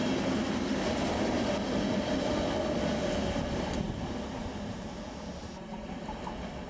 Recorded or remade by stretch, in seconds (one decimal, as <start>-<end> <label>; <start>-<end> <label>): 0.0-6.7 recorded